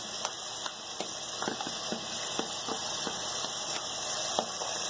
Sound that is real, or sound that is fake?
real